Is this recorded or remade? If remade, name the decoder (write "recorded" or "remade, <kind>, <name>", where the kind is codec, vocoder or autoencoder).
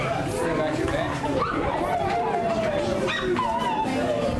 recorded